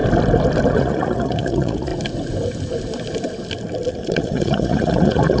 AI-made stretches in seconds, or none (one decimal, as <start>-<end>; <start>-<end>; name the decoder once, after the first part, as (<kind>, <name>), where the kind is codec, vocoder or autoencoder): 0.7-1.9 (vocoder, Vocos); 3.9-5.4